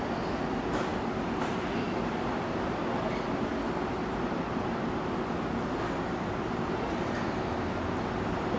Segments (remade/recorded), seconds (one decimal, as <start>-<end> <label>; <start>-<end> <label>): 0.0-8.6 recorded